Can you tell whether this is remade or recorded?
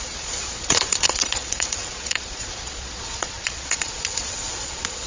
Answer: remade